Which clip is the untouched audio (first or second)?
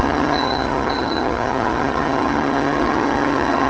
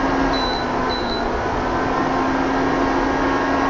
second